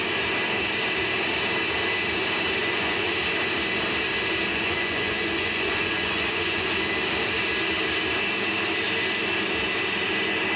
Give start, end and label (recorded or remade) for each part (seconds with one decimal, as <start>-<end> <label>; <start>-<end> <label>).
0.0-2.6 recorded; 2.6-3.1 remade; 3.1-4.5 recorded; 4.5-6.7 remade; 6.7-10.6 recorded